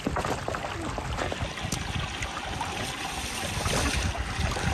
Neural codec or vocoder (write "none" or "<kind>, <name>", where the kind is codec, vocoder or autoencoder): none